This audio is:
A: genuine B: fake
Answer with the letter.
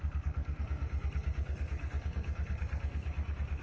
B